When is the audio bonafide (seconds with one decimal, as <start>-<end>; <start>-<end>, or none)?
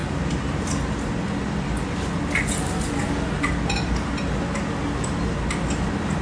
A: 0.0-6.2